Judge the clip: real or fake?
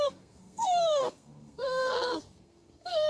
fake